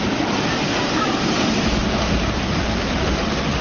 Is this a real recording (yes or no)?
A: no